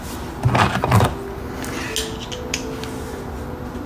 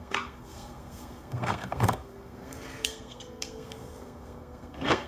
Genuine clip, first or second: first